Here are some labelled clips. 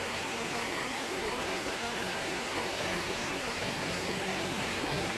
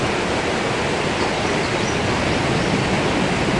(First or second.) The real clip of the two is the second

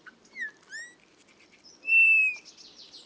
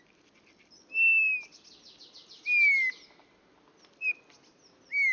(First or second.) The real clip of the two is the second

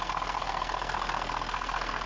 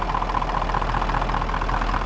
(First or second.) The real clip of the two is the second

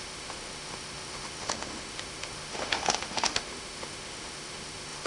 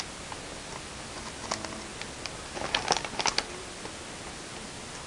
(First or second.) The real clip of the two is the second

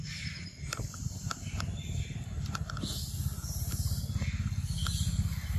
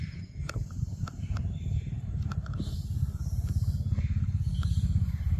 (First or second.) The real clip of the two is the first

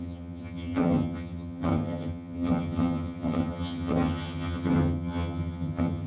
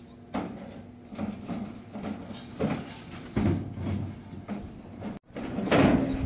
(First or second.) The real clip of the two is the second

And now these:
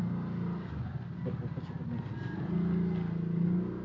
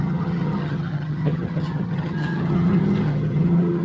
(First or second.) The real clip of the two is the first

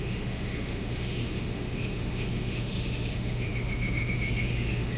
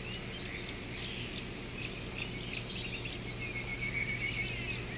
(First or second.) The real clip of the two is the second